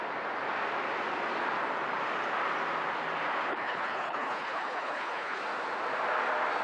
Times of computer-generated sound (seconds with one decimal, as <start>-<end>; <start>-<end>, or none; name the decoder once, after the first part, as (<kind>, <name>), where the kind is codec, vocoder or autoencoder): 3.5-5.4 (codec, HILCodec)